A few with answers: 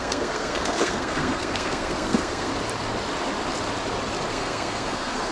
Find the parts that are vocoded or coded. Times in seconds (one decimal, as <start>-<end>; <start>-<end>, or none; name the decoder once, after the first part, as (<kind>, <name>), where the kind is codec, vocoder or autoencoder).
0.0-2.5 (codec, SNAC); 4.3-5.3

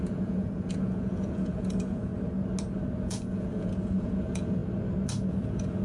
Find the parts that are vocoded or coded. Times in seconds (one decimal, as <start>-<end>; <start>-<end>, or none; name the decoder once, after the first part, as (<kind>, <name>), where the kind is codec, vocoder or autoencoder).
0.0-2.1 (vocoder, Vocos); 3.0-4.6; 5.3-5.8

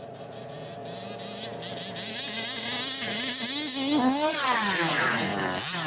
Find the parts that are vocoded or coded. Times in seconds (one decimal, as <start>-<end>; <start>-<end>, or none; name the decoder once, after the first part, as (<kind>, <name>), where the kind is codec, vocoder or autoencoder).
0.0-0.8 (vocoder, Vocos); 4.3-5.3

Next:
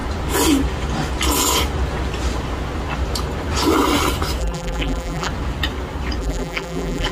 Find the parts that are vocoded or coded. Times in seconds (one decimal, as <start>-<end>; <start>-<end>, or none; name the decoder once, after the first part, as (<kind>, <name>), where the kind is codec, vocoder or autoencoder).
4.4-5.3 (vocoder, BigVGAN v2); 6.2-7.1

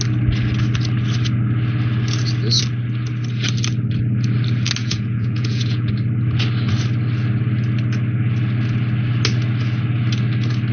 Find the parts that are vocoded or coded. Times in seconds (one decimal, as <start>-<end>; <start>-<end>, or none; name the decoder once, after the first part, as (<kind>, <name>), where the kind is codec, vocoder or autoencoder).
4.8-5.9 (vocoder, Vocos)